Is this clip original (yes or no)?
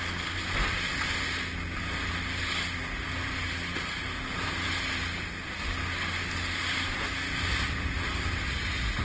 yes